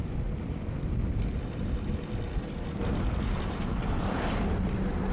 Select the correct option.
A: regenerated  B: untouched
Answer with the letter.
B